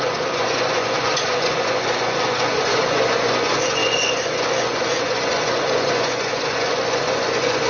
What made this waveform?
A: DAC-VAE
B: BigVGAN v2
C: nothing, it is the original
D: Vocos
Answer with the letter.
D